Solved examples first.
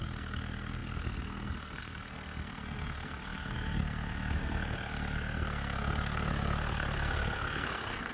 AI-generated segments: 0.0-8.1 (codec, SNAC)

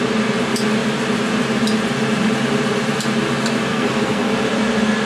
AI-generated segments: 3.7-4.3 (codec, SNAC)

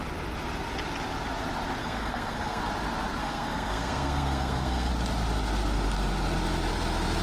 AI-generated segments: 1.8-2.6 (codec, SNAC); 3.2-4.9

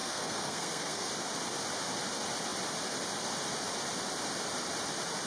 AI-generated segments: 0.0-1.1 (codec, SNAC)